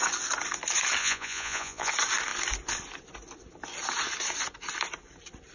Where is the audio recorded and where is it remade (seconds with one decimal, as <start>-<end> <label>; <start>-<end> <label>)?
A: 0.0-1.0 recorded; 1.0-1.9 remade; 1.9-5.5 recorded